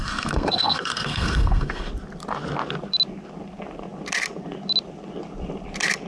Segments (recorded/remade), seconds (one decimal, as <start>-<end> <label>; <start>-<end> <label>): 0.0-1.9 remade; 1.9-6.1 recorded